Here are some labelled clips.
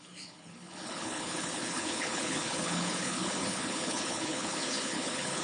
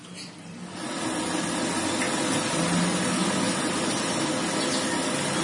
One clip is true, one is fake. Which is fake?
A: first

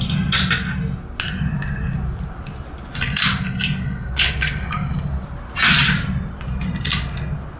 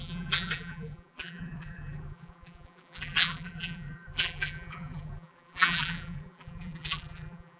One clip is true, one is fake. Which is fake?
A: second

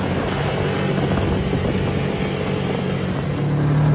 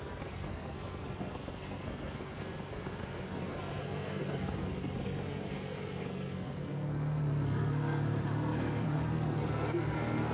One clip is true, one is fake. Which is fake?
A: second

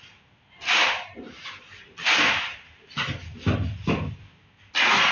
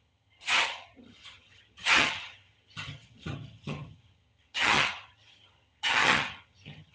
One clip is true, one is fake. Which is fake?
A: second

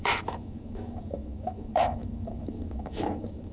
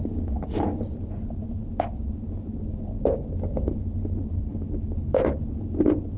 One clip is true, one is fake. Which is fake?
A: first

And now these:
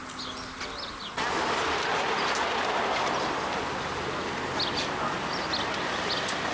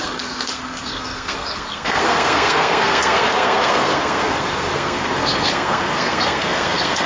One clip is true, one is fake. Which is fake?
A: second